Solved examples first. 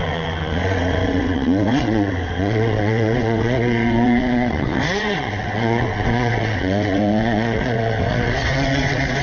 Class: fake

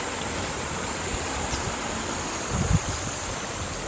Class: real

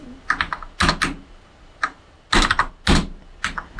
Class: real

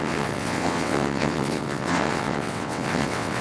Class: fake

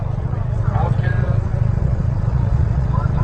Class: fake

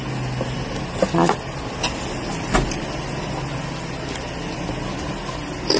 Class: real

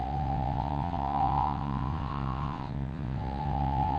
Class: fake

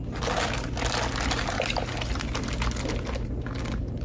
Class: real